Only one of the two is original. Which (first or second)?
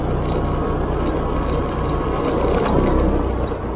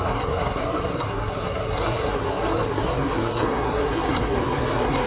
first